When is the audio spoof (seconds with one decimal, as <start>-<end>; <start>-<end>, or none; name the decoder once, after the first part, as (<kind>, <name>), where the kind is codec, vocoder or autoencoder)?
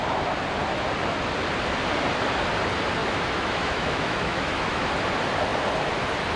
3.0-4.9 (autoencoder, DAC-VAE)